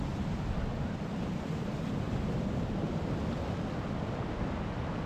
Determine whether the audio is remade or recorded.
recorded